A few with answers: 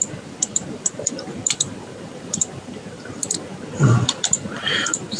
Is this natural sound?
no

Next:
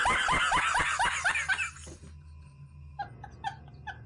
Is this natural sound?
yes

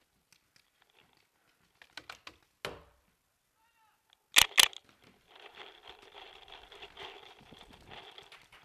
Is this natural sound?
yes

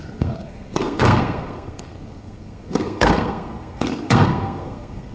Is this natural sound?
no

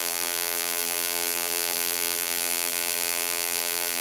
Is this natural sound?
no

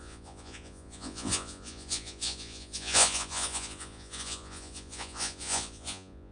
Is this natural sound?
no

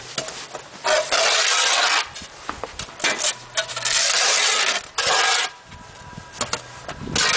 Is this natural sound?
yes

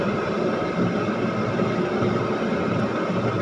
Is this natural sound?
yes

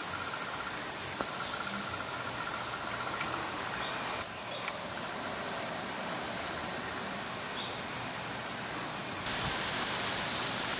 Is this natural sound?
yes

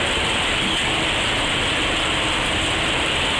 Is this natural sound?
yes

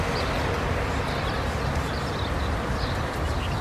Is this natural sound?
yes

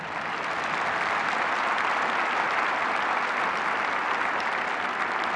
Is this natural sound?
yes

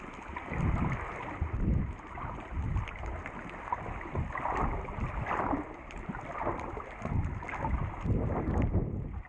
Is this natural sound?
yes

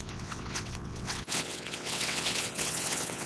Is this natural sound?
no